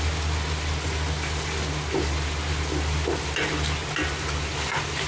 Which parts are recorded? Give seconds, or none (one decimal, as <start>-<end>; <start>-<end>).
0.0-5.1